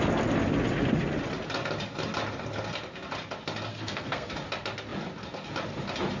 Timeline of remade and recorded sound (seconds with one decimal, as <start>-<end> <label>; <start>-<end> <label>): 0.0-3.7 recorded; 3.7-4.3 remade; 4.3-6.2 recorded